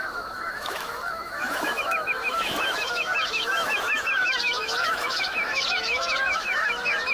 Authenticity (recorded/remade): remade